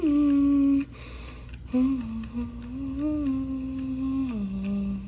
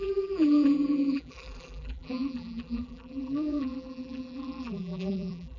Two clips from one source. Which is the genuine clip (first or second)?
first